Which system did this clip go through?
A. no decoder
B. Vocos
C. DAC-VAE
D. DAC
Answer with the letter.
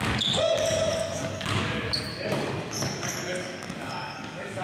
D